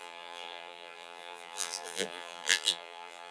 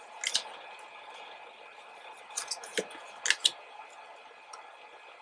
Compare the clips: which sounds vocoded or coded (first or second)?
first